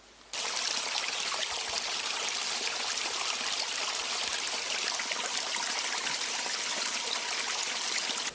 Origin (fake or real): fake